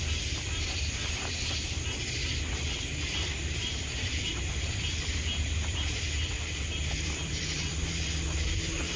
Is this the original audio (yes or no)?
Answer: no